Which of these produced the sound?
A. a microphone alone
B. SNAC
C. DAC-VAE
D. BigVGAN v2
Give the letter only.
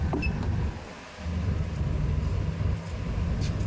A